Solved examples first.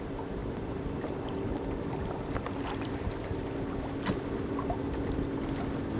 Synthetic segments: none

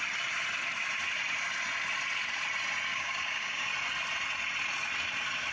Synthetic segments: 2.9-3.7 (codec, DAC)

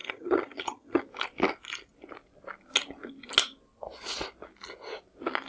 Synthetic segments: 0.0-1.0 (vocoder, HiFi-GAN)

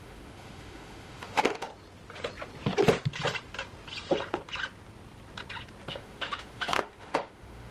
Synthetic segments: 0.0-1.7 (autoencoder, DAC-VAE); 5.9-7.7

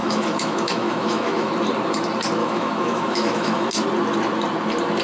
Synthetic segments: 0.0-1.5 (autoencoder, DAC-VAE); 2.4-3.7

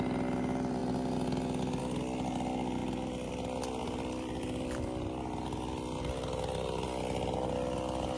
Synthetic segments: 2.8-3.3 (vocoder, BigVGAN v2); 3.8-5.2

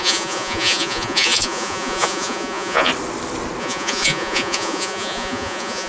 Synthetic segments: 0.0-2.9 (vocoder, Vocos); 3.6-5.9